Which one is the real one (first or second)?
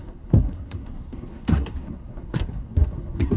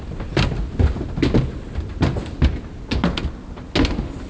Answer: second